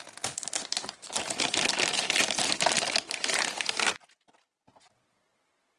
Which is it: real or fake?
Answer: real